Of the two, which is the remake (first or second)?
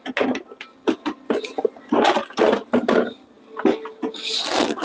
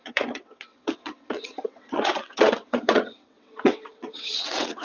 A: second